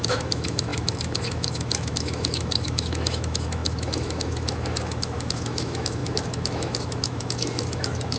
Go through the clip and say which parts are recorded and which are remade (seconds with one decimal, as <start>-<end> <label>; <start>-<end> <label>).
0.0-8.2 remade